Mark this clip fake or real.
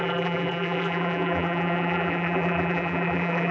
fake